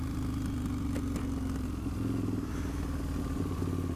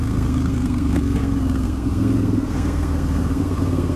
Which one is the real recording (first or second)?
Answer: first